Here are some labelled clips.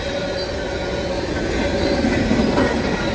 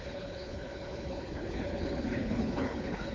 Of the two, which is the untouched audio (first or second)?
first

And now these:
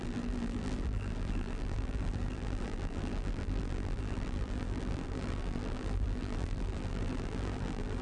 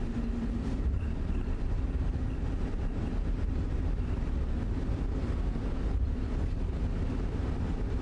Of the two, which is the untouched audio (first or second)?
second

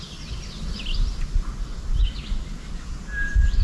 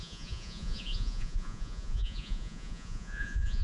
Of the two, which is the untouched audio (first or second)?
first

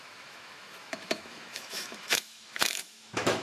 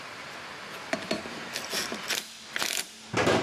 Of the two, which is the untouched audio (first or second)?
second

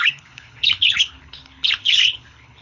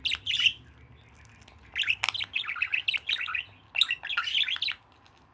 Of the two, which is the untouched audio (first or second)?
second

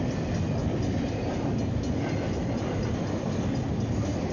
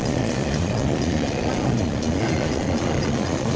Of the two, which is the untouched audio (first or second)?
first